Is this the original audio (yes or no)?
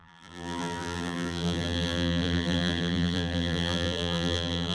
no